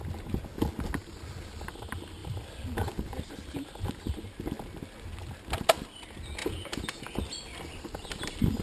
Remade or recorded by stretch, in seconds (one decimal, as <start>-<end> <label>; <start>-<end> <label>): 0.0-6.4 recorded; 6.4-7.0 remade; 7.0-8.6 recorded